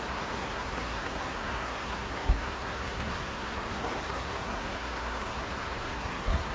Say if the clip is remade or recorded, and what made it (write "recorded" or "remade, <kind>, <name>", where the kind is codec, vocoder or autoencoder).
remade, codec, SNAC